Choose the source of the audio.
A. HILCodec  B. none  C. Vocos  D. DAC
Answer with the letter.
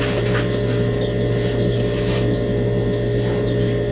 B